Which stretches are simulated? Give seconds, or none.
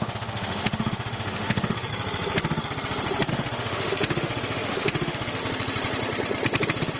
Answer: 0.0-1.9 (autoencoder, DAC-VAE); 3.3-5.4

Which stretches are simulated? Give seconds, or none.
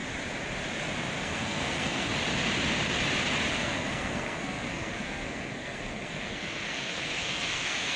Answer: 1.2-2.1 (codec, SNAC); 3.5-8.0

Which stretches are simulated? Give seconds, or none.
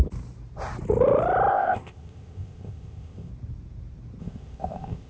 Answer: 1.5-3.3 (codec, ZipCodec); 4.2-5.1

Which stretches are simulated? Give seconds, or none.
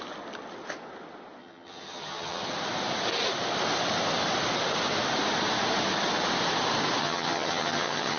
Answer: 1.4-2.5 (vocoder, HiFi-GAN); 7.0-8.2